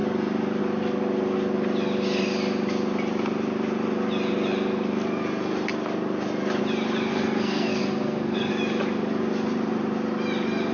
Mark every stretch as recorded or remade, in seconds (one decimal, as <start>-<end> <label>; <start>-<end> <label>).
0.0-7.1 recorded; 7.1-8.5 remade; 8.5-10.7 recorded